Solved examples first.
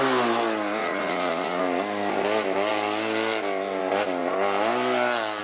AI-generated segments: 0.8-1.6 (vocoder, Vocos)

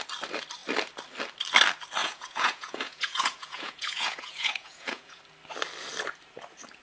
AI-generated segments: 2.0-5.2 (vocoder, Vocos)